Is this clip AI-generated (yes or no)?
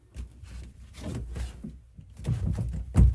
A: no